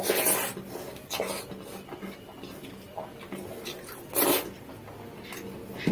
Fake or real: real